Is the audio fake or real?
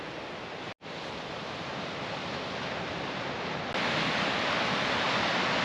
real